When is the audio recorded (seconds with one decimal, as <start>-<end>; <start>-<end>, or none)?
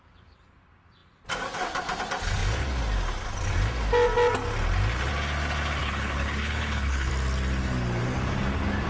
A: 0.0-5.8; 7.1-8.9